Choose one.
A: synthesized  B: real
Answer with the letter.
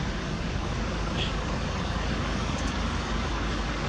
A